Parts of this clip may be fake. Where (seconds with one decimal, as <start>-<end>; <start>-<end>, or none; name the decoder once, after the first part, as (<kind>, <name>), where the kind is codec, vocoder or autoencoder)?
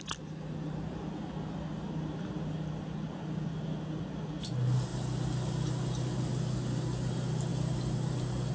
0.0-3.5 (vocoder, BigVGAN v2); 4.5-8.5